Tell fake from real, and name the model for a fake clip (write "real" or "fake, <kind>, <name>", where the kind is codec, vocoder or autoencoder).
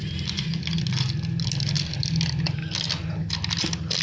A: real